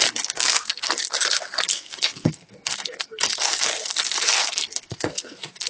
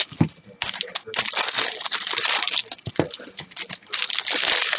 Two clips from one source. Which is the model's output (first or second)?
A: first